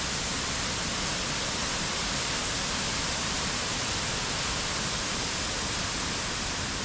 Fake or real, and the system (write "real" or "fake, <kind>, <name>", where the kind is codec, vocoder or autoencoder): real